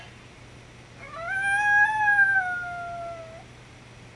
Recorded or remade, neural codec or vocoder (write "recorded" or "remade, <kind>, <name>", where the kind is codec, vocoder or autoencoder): recorded